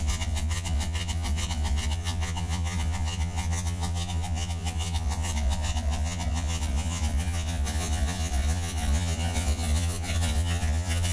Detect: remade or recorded remade